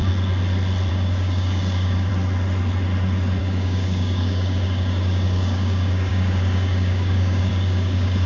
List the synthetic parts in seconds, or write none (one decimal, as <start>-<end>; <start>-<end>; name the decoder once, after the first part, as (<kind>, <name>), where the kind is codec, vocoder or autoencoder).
0.9-2.1 (codec, DAC); 3.4-8.3